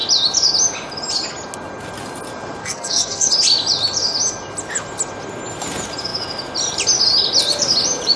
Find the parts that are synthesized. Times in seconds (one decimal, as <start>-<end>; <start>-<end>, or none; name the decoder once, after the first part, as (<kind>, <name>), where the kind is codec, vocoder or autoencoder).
2.6-3.3 (codec, SNAC)